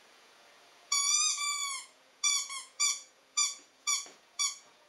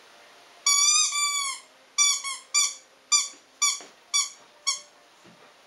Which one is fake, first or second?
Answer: first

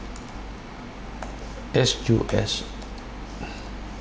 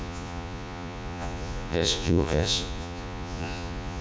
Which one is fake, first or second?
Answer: second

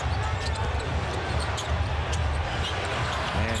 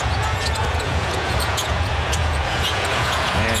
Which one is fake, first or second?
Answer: second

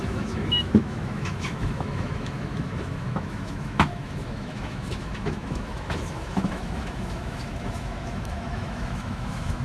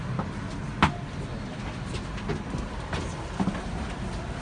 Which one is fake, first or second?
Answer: first